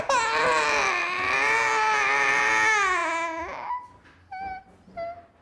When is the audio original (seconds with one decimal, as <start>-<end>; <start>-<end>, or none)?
0.0-5.4